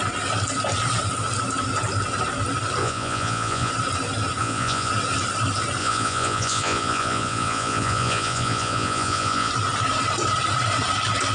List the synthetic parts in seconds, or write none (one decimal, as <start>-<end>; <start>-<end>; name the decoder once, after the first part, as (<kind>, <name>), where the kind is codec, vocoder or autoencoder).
2.8-3.7 (vocoder, Vocos); 4.4-4.9; 5.8-9.5